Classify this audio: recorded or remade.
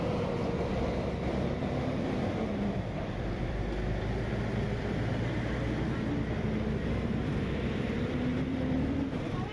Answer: remade